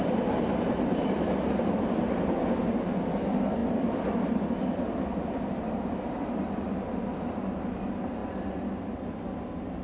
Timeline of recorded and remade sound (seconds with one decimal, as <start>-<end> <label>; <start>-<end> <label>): 0.0-9.8 recorded